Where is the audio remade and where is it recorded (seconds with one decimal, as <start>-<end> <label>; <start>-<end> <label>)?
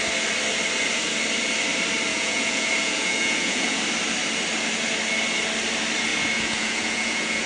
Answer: 0.0-2.1 recorded; 2.1-3.8 remade; 3.8-6.1 recorded; 6.1-7.5 remade